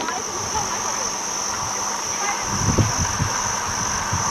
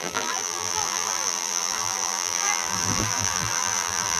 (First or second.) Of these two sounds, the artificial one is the second